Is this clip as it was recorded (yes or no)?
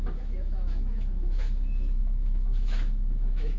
no